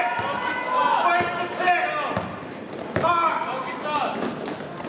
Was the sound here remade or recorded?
recorded